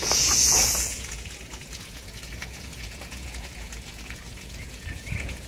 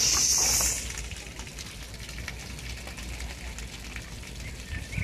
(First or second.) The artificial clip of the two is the first